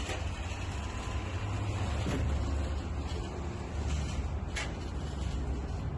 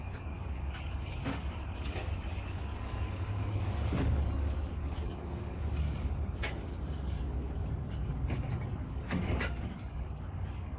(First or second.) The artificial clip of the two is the second